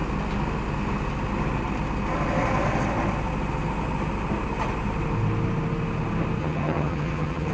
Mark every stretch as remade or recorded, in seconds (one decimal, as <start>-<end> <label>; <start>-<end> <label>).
0.0-6.4 recorded; 6.4-7.5 remade